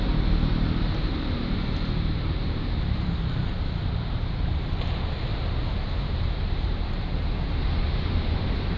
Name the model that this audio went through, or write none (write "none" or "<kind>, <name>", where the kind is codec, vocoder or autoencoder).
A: vocoder, BigVGAN v2